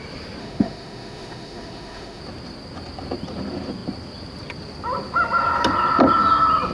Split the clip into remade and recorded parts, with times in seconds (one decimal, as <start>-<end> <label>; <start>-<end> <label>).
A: 0.0-0.4 recorded; 0.4-2.2 remade; 2.2-6.7 recorded